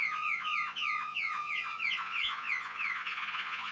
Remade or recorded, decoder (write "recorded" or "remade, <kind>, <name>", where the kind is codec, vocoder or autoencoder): remade, vocoder, Vocos